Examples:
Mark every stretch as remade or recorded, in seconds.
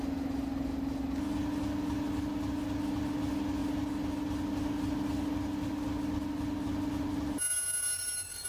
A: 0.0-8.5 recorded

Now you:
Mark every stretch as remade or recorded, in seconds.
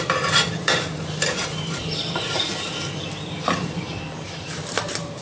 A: 0.0-2.5 remade; 2.5-3.2 recorded; 3.2-5.2 remade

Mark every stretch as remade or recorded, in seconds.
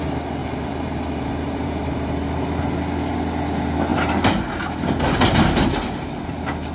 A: 0.0-0.4 recorded; 0.4-1.7 remade; 1.7-3.9 recorded; 3.9-4.4 remade; 4.4-6.7 recorded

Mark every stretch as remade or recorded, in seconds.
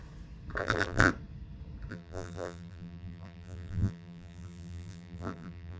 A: 0.0-0.6 recorded; 0.6-1.1 remade; 1.1-1.9 recorded; 1.9-5.8 remade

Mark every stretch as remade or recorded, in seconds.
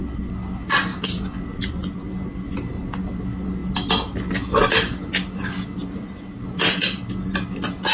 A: 0.0-0.9 recorded; 0.9-1.9 remade; 1.9-5.8 recorded; 5.8-6.5 remade; 6.5-7.9 recorded